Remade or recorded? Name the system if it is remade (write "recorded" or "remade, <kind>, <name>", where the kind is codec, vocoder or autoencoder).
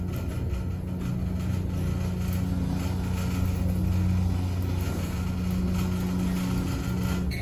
recorded